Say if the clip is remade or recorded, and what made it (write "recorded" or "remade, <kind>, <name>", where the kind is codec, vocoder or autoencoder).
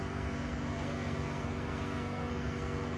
remade, codec, SNAC